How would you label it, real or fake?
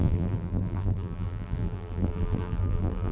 fake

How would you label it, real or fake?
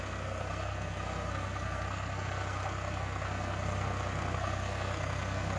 fake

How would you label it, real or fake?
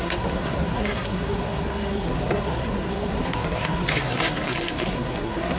fake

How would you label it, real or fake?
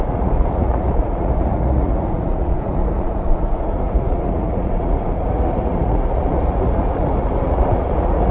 fake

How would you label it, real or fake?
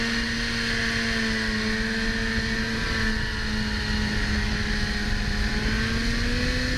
real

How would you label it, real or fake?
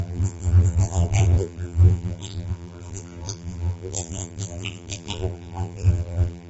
fake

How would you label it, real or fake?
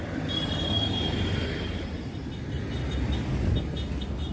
real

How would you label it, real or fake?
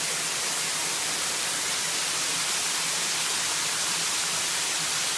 real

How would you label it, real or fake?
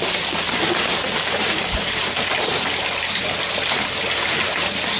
real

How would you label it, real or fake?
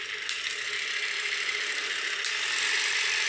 real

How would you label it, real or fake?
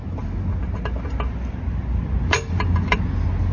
real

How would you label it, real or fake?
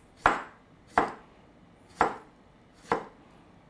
real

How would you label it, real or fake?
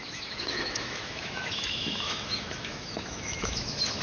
fake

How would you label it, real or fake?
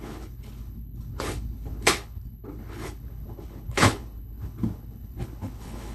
fake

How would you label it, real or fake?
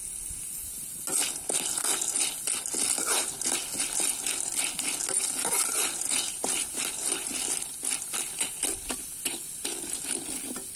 real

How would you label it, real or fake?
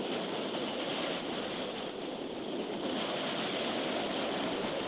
real